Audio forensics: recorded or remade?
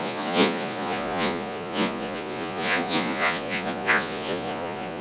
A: remade